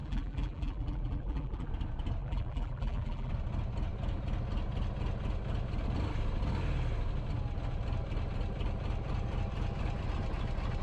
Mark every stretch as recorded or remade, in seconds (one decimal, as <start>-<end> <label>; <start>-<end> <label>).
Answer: 0.0-1.7 remade; 1.7-2.2 recorded; 2.2-3.3 remade; 3.3-10.8 recorded